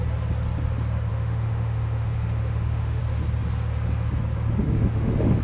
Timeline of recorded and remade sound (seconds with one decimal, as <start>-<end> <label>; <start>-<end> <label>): 0.0-1.1 recorded; 1.1-3.0 remade; 3.0-4.6 recorded; 4.6-5.4 remade